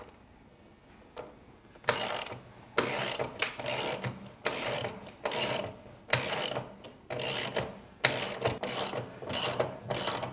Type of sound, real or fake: real